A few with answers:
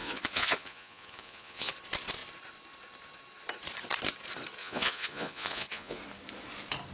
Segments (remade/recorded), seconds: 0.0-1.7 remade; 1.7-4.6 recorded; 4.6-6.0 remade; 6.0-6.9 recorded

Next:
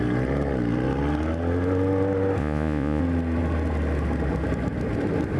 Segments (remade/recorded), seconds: 0.0-2.4 recorded; 2.4-3.0 remade; 3.0-5.4 recorded

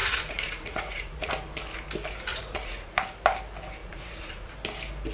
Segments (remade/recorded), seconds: 0.0-1.3 remade; 1.3-2.3 recorded; 2.3-3.0 remade; 3.0-3.8 recorded; 3.8-4.5 remade; 4.5-5.1 recorded

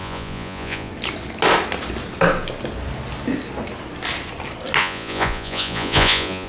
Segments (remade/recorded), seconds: 0.0-0.9 remade; 0.9-4.8 recorded; 4.8-6.5 remade

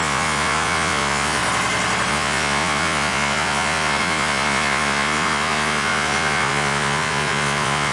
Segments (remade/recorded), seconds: 0.0-1.4 remade; 1.4-2.1 recorded; 2.1-7.9 remade